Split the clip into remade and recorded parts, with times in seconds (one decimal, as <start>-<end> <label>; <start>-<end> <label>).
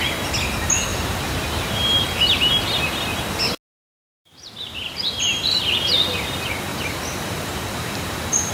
0.0-0.9 recorded; 0.9-1.9 remade; 1.9-4.1 recorded; 4.1-5.6 remade; 5.6-6.7 recorded; 6.7-8.5 remade